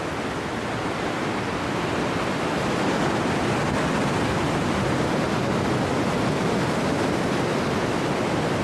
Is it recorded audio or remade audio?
recorded